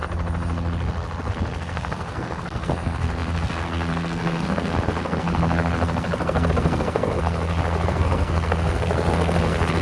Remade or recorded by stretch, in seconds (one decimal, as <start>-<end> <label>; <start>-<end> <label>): 0.0-1.3 recorded; 1.3-9.8 remade